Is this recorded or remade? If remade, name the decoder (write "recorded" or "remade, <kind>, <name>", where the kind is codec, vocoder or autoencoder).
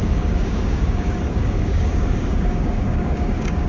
remade, codec, DAC